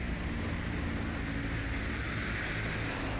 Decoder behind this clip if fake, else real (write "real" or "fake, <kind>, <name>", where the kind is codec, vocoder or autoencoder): real